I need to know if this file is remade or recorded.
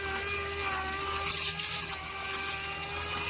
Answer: recorded